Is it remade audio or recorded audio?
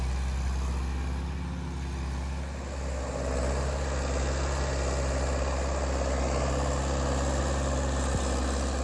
recorded